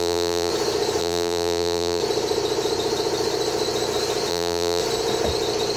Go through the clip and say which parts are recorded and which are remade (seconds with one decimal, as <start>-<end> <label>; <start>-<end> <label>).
0.0-0.5 remade; 0.5-1.0 recorded; 1.0-2.0 remade; 2.0-4.3 recorded; 4.3-4.8 remade; 4.8-5.8 recorded